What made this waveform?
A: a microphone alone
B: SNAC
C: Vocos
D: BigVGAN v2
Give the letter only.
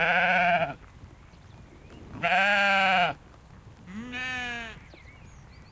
A